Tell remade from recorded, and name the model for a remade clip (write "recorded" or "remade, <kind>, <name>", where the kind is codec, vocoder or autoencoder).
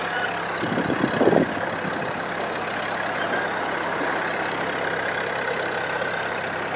recorded